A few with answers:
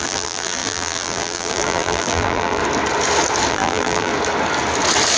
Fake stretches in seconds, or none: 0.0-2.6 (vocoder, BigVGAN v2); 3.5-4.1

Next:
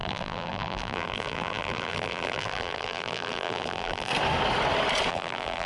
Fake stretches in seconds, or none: 0.0-4.1 (vocoder, BigVGAN v2); 5.1-5.7

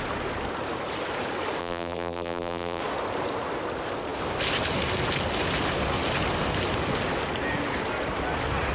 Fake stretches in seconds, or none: 1.6-2.8 (vocoder, BigVGAN v2)

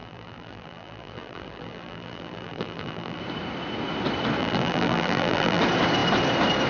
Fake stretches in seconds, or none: 0.0-3.2 (vocoder, BigVGAN v2); 4.4-5.6

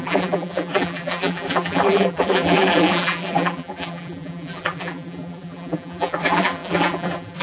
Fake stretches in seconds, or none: 0.0-7.4 (vocoder, BigVGAN v2)